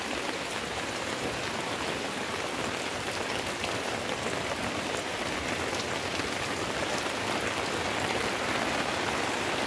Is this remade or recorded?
remade